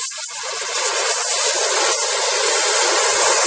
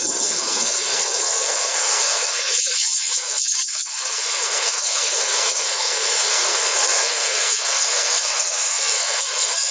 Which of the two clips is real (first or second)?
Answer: first